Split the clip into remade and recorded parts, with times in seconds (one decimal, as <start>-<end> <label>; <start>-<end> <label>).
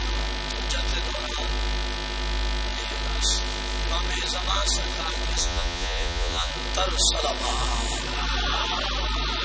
0.0-5.4 recorded; 5.4-6.5 remade; 6.5-9.4 recorded